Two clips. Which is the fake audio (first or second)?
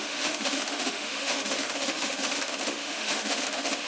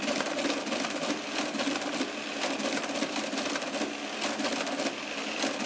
first